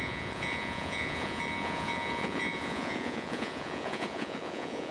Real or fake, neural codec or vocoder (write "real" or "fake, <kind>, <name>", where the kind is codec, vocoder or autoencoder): fake, vocoder, Vocos